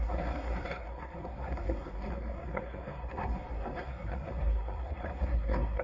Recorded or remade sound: remade